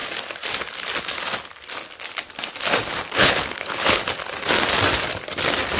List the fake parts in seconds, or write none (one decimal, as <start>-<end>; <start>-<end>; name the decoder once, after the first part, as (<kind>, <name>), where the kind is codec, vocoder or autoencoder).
3.2-4.0 (codec, HILCodec)

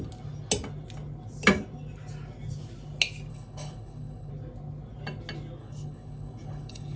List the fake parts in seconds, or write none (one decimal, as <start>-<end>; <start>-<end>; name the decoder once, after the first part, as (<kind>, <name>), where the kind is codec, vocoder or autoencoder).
3.3-4.3 (codec, HILCodec); 5.6-7.0

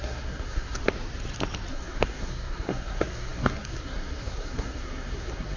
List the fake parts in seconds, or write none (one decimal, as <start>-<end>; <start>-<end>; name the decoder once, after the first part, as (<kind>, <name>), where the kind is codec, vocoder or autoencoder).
0.0-0.8 (codec, SNAC); 1.7-5.6

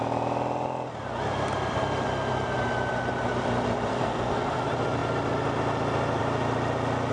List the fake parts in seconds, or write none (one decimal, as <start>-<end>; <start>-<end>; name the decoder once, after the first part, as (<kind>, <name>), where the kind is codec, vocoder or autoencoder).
3.9-4.6 (codec, SNAC)

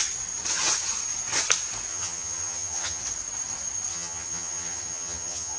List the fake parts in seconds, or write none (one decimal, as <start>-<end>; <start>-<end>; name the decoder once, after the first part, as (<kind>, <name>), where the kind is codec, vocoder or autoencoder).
1.9-3.0 (vocoder, HiFi-GAN); 3.9-5.6

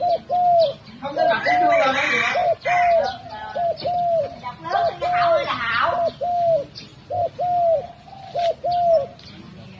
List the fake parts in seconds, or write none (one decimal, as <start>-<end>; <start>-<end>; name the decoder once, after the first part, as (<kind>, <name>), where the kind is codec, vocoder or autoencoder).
none